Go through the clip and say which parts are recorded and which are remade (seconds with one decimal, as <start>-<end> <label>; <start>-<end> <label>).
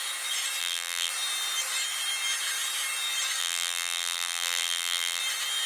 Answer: 0.0-0.6 recorded; 0.6-1.1 remade; 1.1-3.4 recorded; 3.4-5.2 remade; 5.2-5.7 recorded